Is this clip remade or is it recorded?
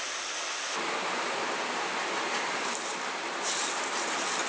recorded